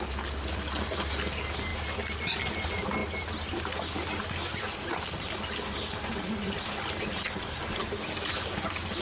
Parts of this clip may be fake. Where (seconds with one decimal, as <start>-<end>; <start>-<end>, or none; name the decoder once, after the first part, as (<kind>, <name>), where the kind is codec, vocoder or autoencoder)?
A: none